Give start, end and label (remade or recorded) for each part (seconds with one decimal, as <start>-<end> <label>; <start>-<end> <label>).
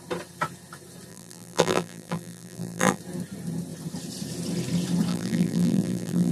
0.0-1.1 recorded; 1.1-3.0 remade; 3.0-5.1 recorded; 5.1-6.3 remade